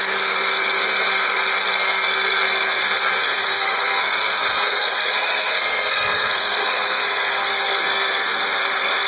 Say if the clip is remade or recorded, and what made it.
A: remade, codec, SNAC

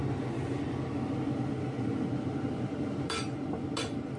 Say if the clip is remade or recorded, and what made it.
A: recorded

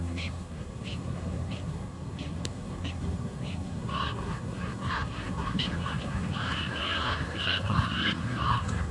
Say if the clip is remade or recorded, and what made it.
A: remade, codec, SNAC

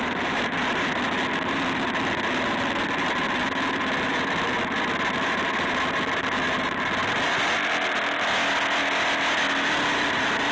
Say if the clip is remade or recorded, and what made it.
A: recorded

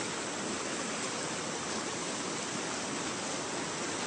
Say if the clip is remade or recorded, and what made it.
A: recorded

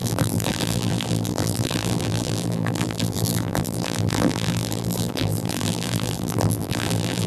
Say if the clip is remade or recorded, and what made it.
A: remade, vocoder, BigVGAN v2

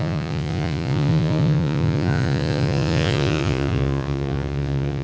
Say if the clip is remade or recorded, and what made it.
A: remade, vocoder, Vocos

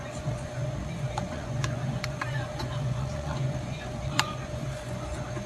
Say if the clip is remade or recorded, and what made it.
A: remade, vocoder, Vocos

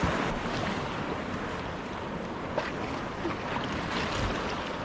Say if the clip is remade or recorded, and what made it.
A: recorded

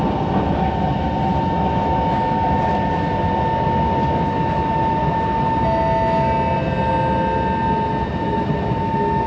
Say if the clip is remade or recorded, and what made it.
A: recorded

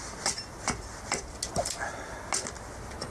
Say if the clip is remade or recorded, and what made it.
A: recorded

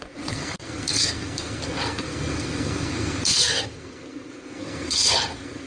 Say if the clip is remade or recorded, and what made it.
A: remade, codec, SNAC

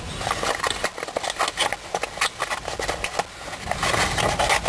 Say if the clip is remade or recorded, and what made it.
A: recorded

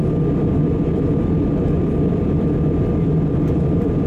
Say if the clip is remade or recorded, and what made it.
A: recorded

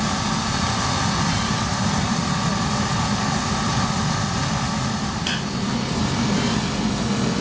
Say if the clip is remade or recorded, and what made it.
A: recorded